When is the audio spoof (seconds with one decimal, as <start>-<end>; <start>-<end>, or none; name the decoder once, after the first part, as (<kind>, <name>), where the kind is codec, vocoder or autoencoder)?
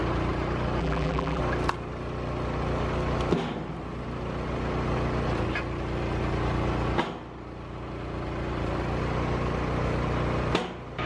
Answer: 0.8-1.4 (vocoder, BigVGAN v2)